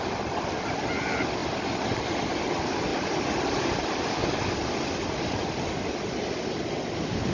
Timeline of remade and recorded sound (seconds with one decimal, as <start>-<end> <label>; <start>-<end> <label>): 0.0-7.3 recorded